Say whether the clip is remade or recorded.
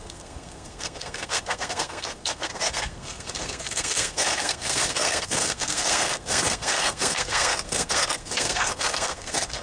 remade